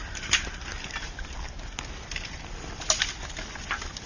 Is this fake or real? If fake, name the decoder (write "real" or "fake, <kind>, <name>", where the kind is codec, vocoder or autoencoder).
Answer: real